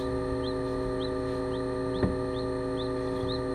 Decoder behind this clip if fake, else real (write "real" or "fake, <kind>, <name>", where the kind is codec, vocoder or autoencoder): real